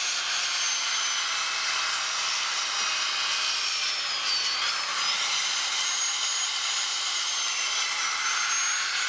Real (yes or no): yes